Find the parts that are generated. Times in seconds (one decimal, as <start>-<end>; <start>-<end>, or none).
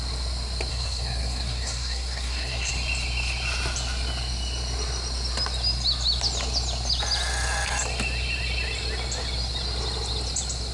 0.7-2.7